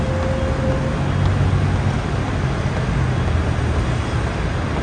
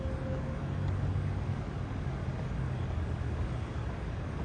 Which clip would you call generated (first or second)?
second